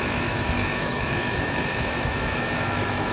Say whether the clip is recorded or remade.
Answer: remade